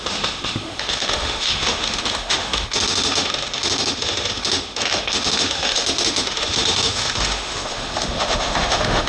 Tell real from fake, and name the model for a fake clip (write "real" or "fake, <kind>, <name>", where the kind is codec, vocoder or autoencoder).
fake, autoencoder, DAC-VAE